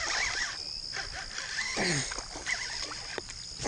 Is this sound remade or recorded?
remade